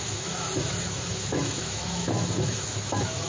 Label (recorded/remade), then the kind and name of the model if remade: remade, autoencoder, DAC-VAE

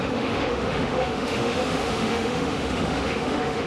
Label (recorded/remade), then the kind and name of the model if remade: remade, autoencoder, DAC-VAE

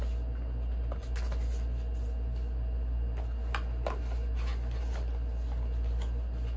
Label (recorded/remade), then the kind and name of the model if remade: recorded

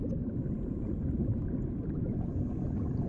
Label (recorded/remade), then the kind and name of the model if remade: recorded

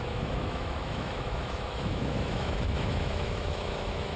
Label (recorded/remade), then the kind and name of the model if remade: remade, autoencoder, DAC-VAE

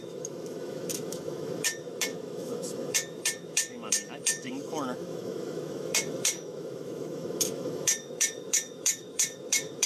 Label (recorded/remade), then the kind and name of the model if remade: remade, autoencoder, DAC-VAE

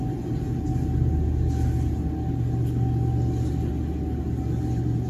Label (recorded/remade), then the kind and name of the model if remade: recorded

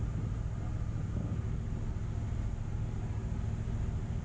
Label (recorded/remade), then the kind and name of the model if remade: recorded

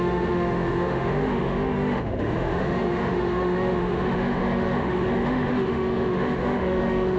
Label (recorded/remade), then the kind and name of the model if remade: remade, autoencoder, DAC-VAE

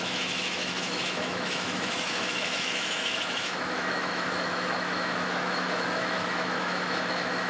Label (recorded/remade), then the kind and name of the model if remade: remade, autoencoder, DAC-VAE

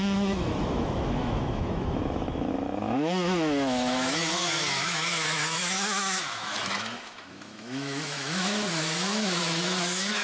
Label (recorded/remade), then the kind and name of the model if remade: remade, autoencoder, DAC-VAE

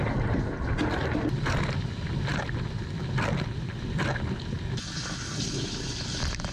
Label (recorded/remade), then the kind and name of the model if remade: recorded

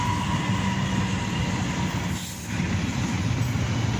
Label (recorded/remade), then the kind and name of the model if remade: recorded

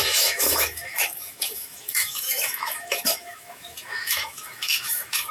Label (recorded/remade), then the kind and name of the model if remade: remade, autoencoder, DAC-VAE